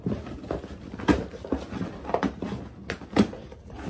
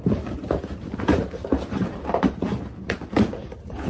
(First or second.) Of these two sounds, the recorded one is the first